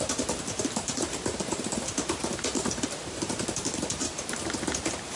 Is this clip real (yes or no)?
no